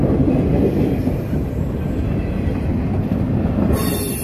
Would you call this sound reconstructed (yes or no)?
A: no